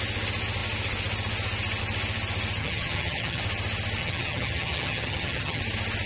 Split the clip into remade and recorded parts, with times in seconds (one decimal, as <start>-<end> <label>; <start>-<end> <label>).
0.0-2.6 recorded; 2.6-3.4 remade; 3.4-4.0 recorded; 4.0-5.6 remade; 5.6-6.1 recorded